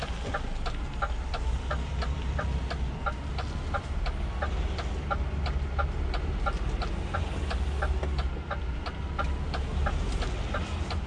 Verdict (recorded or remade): recorded